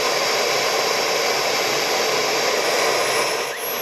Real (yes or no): yes